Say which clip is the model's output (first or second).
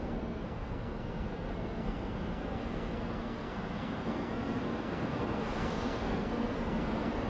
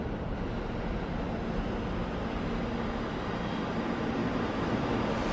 first